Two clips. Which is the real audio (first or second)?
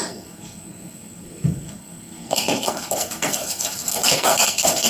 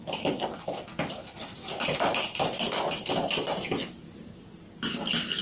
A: second